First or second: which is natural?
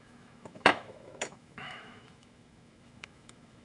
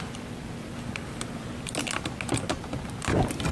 second